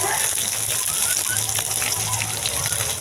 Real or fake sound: real